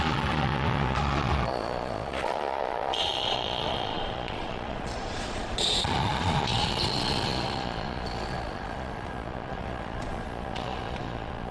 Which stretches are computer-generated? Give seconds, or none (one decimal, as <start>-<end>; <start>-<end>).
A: 0.0-11.5